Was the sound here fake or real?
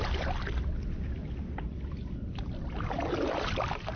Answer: real